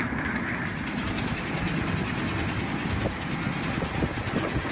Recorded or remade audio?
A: recorded